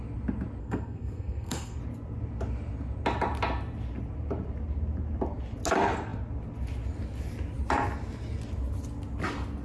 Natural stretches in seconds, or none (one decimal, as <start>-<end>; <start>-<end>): 0.0-0.6; 1.8-9.6